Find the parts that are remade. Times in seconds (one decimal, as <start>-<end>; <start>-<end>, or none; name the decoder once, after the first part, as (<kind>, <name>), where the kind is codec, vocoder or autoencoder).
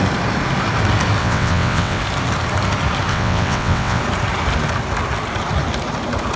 1.2-2.0 (vocoder, WaveNeXt); 3.1-4.0